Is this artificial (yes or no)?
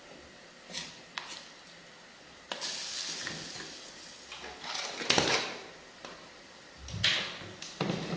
no